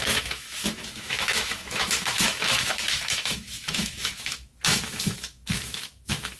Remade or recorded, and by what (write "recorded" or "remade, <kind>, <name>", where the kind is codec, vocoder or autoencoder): remade, autoencoder, DAC-VAE